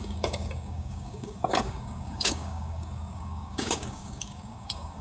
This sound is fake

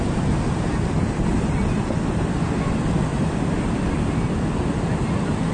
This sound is real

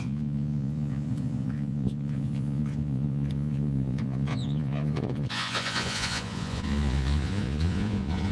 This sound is fake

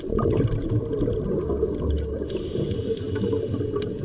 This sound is real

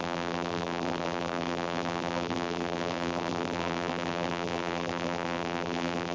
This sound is fake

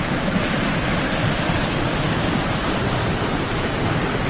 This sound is real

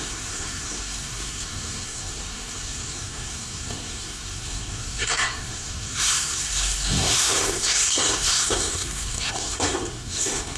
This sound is fake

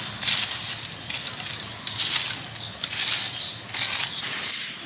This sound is real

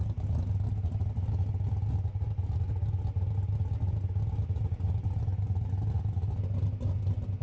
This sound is real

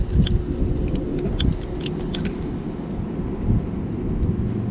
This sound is real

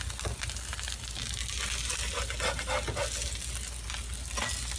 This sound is real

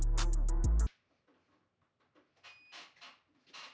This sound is real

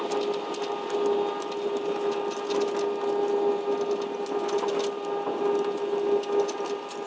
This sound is real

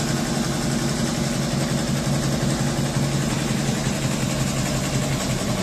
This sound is real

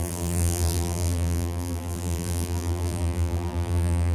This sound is fake